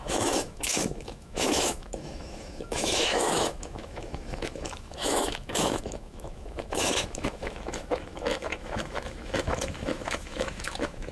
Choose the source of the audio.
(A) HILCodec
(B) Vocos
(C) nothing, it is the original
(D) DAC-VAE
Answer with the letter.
D